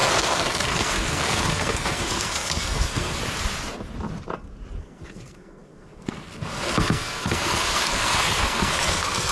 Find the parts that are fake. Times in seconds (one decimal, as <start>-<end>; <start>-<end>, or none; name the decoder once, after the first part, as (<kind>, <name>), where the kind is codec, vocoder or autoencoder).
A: 0.0-3.2 (codec, SNAC); 4.8-9.3